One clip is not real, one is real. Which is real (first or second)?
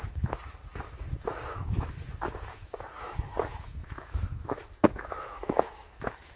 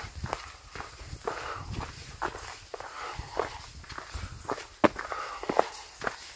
second